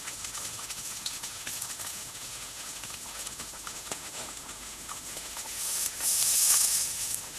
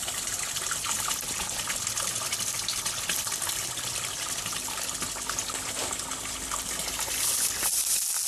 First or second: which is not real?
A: first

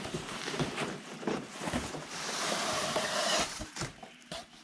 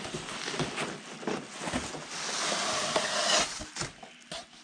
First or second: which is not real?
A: first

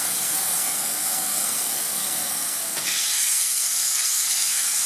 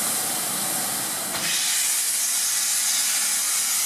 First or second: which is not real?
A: first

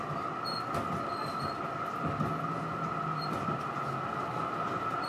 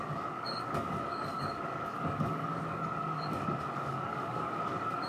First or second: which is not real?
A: second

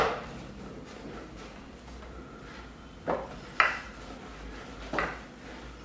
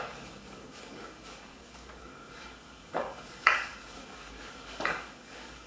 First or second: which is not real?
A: second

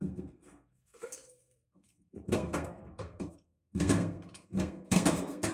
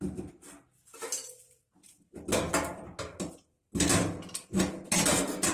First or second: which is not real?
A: first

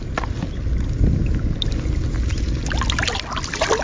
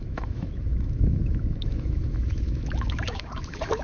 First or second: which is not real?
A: second